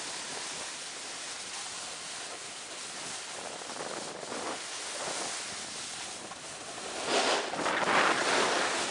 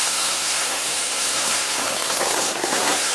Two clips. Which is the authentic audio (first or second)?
first